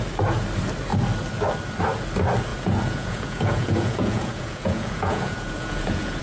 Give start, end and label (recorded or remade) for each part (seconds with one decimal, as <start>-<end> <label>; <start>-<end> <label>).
0.0-2.5 recorded; 2.5-6.2 remade